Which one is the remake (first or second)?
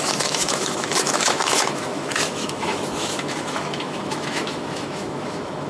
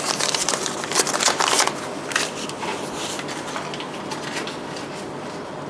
first